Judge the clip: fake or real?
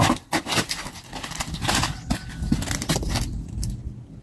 real